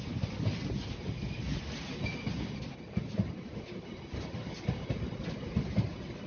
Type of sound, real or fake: real